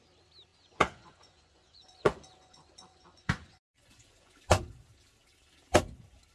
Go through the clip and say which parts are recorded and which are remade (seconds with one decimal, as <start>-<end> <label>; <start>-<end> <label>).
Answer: 0.0-0.5 recorded; 0.5-4.3 remade; 4.3-6.3 recorded